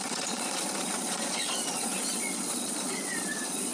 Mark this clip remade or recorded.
remade